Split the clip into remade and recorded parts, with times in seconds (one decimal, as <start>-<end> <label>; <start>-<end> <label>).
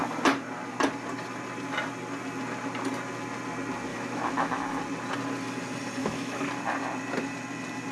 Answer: 0.0-3.9 recorded; 3.9-4.8 remade; 4.8-6.0 recorded; 6.0-6.5 remade; 6.5-7.9 recorded